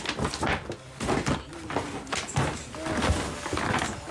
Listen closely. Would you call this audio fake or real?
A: real